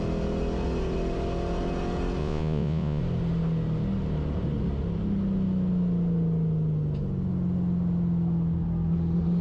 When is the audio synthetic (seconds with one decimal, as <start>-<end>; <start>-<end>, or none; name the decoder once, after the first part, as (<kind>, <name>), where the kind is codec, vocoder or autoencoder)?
2.2-3.0 (vocoder, Vocos)